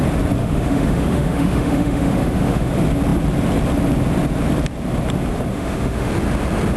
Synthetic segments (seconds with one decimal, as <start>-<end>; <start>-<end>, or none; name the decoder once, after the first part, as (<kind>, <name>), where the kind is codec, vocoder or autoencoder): 0.4-2.7 (autoencoder, DAC-VAE); 5.5-6.1